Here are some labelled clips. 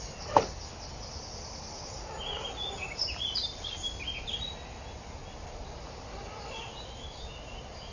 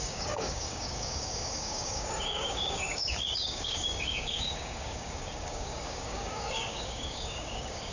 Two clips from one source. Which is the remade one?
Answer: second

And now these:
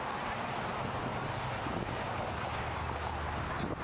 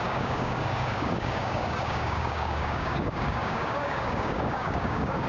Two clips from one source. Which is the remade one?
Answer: second